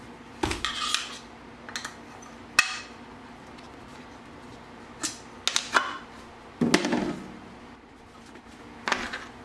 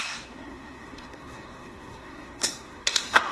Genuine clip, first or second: first